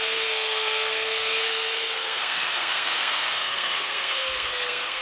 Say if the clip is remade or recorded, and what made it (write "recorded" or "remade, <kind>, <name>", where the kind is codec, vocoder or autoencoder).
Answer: remade, codec, SNAC